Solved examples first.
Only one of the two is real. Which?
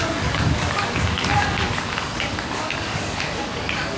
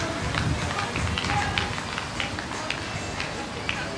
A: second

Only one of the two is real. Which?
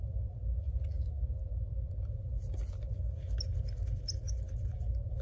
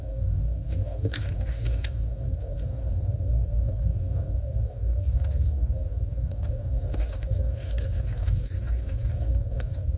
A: first